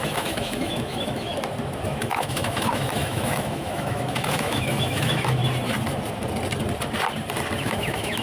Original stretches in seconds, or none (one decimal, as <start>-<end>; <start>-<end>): 1.3-1.9; 5.4-7.6